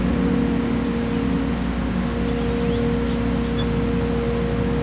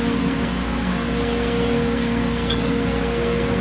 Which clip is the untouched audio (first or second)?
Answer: first